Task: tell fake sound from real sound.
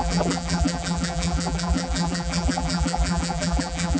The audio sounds fake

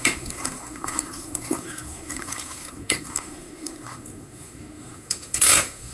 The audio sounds fake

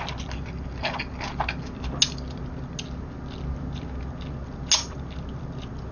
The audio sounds real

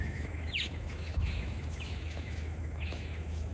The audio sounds fake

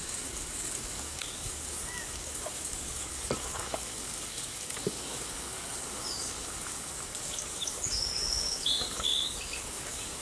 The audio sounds fake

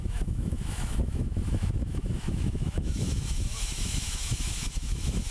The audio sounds fake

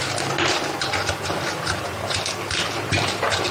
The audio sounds real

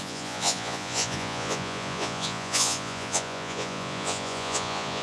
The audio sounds fake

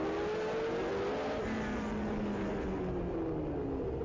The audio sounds real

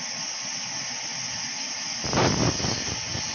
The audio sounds real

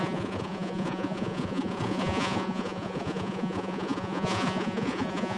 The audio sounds fake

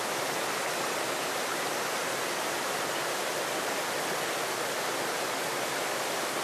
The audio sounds real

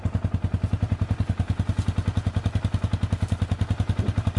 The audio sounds real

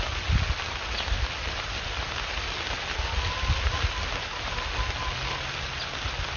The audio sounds real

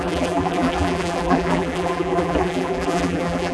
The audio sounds fake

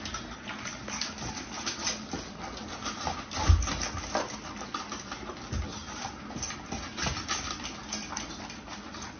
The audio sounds real